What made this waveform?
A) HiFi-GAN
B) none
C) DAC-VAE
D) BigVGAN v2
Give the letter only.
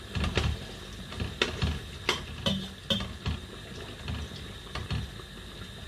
B